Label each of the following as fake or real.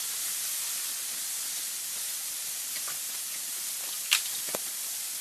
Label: real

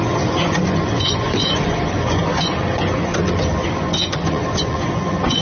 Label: fake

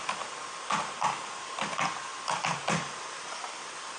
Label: real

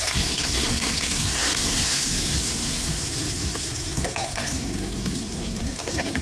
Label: fake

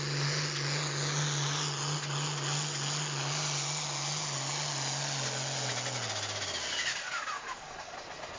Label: real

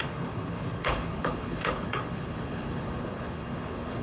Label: fake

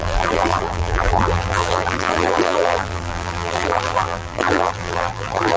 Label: fake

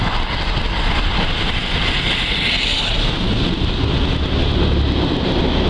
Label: real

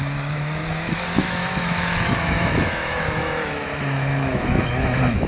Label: fake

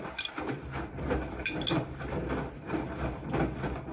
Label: real